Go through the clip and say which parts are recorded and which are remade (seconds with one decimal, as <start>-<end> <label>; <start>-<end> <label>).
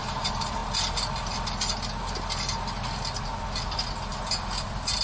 0.0-5.0 recorded